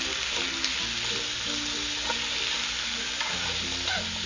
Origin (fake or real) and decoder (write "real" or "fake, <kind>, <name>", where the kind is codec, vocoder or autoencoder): real